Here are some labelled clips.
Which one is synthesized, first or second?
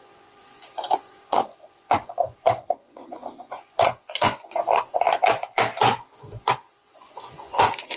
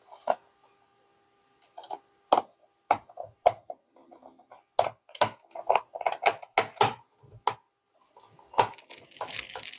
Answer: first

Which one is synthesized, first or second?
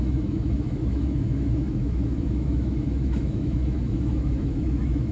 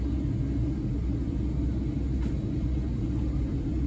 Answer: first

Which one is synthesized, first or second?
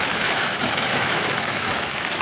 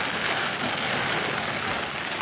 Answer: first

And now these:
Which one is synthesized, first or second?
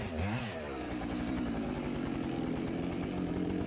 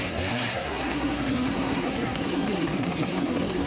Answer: second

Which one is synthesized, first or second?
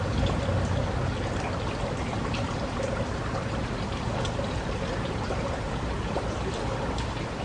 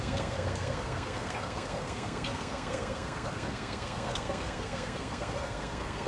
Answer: second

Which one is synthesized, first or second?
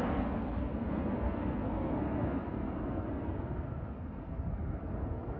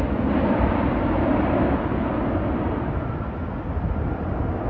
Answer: first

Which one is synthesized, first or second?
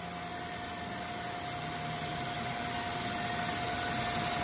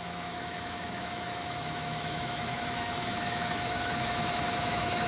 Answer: second